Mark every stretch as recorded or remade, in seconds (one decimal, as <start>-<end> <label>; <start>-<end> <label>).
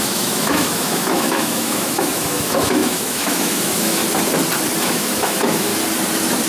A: 0.0-4.0 remade; 4.0-4.8 recorded; 4.8-5.7 remade; 5.7-6.5 recorded